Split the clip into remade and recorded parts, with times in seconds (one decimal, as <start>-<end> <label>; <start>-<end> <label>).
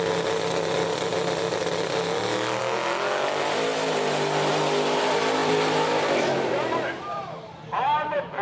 0.0-5.4 recorded; 5.4-8.4 remade